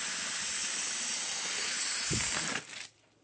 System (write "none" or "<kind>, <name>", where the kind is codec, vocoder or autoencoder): none